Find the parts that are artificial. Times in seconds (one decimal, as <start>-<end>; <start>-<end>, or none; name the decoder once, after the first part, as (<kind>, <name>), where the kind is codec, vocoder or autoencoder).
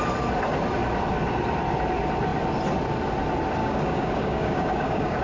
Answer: 3.6-5.2 (codec, DAC)